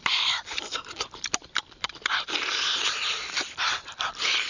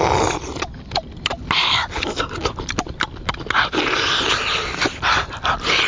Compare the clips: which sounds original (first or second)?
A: second